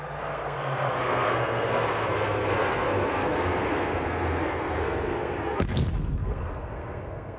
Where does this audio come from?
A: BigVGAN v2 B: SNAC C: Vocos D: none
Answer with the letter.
B